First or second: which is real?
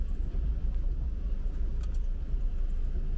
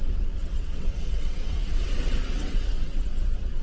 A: first